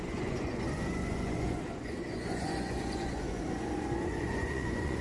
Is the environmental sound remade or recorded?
remade